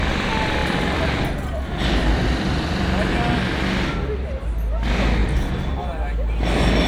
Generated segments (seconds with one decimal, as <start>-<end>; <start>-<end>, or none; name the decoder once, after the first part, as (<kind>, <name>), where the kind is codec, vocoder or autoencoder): 0.6-3.1 (vocoder, BigVGAN v2)